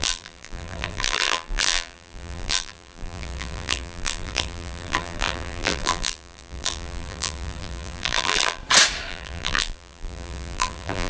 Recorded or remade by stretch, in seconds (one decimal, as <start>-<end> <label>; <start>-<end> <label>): 0.0-8.6 remade; 8.6-9.1 recorded; 9.1-11.1 remade